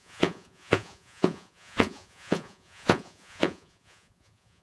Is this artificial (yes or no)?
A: yes